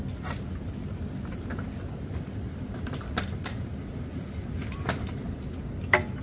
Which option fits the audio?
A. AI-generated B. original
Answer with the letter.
B